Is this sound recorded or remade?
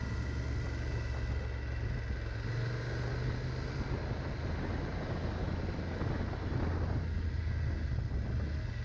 recorded